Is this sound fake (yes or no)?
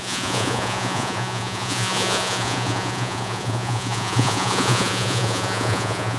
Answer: yes